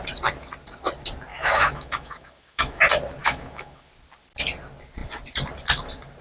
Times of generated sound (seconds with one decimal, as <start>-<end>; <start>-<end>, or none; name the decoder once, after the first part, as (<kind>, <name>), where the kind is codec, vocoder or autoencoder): 1.3-2.8 (autoencoder, DAC-VAE); 3.2-3.9